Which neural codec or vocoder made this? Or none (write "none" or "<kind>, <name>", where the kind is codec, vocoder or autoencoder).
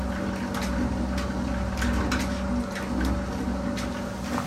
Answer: none